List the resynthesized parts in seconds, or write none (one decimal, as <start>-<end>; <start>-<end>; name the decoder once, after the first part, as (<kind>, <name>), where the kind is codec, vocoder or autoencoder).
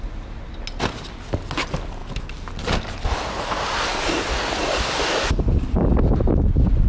none